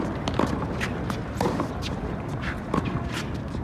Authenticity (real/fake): real